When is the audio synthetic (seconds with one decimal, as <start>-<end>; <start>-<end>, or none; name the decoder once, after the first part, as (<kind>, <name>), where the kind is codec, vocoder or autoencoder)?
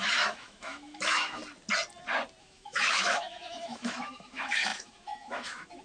0.0-1.4 (autoencoder, DAC-VAE); 2.4-5.8